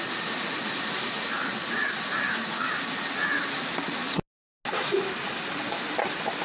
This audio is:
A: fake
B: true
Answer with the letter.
B